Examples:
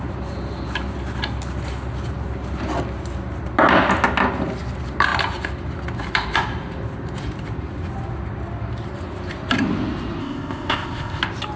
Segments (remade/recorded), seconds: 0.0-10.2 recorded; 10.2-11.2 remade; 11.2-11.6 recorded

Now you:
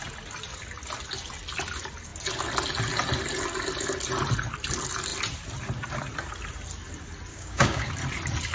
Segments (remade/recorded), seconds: 0.0-7.3 recorded; 7.3-7.9 remade; 7.9-8.5 recorded

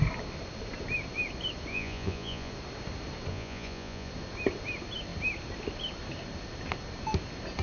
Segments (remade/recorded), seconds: 0.0-1.7 recorded; 1.7-2.5 remade; 2.5-3.3 recorded; 3.3-4.1 remade; 4.1-7.6 recorded

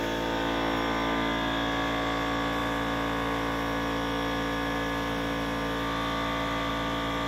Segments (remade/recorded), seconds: 0.0-7.3 recorded

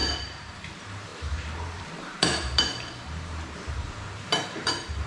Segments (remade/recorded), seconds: 0.0-5.1 remade

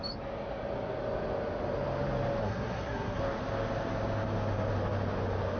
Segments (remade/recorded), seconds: 0.0-2.4 recorded; 2.4-3.2 remade; 3.2-5.6 recorded

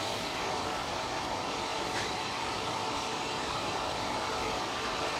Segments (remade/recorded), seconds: 0.0-5.2 remade

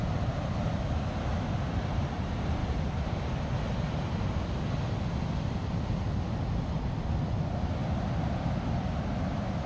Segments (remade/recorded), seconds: 0.0-2.6 recorded; 2.6-3.5 remade; 3.5-9.7 recorded